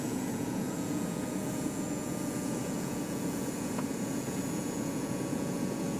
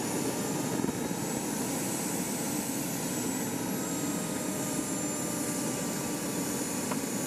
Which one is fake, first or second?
first